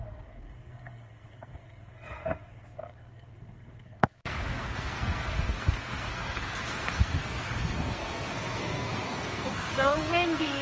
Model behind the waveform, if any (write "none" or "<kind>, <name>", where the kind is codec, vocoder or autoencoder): codec, SNAC